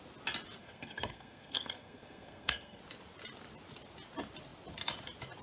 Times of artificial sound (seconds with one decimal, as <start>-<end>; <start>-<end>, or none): 0.6-2.8